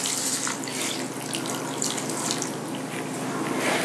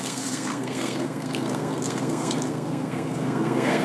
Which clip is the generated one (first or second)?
second